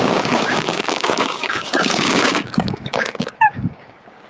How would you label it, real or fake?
fake